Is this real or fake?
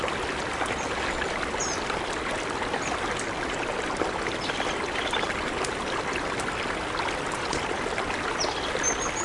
real